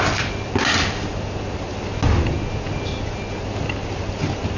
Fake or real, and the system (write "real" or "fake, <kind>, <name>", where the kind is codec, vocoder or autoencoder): real